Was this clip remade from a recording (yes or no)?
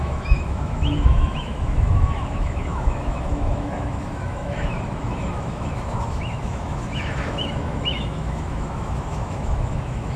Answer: yes